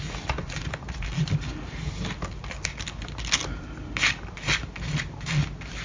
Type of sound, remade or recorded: recorded